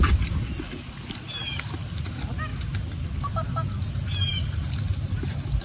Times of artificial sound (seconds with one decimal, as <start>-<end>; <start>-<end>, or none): none